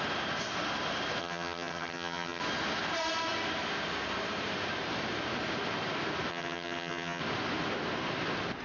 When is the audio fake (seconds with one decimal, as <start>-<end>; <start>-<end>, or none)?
1.2-2.4; 6.3-7.2